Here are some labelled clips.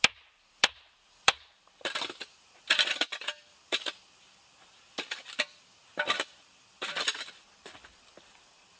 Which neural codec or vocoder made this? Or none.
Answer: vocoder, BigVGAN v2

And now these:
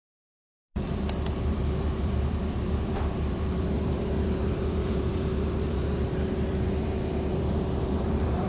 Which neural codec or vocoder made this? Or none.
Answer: vocoder, BigVGAN v2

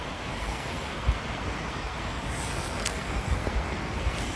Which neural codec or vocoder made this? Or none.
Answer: codec, SNAC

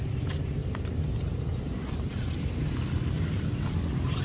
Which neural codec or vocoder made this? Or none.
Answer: none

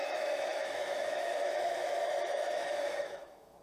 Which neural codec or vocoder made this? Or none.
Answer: autoencoder, DAC-VAE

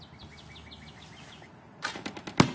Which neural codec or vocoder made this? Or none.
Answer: none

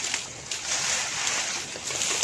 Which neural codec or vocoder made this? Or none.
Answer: none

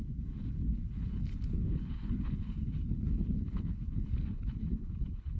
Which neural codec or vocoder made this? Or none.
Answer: codec, HILCodec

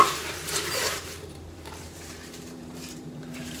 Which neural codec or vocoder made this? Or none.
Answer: vocoder, BigVGAN v2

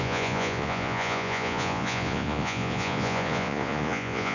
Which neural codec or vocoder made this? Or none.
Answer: vocoder, Vocos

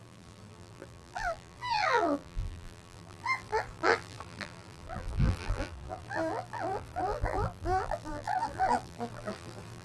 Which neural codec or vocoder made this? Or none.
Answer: vocoder, BigVGAN v2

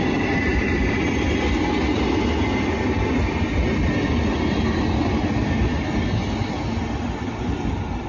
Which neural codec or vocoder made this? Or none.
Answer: none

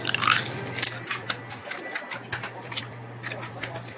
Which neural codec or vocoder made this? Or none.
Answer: none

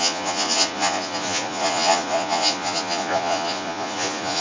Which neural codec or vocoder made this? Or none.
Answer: vocoder, Vocos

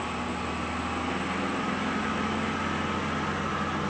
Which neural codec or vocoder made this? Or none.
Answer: none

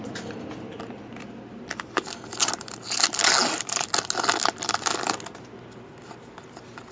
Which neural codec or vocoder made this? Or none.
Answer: none